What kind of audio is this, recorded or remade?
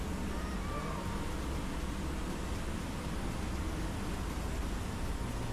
recorded